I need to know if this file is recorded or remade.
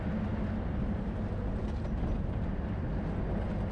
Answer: recorded